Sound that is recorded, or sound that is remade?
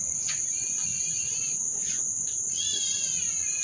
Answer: remade